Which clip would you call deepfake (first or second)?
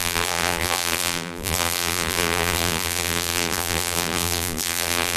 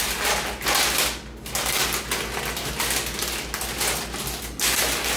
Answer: first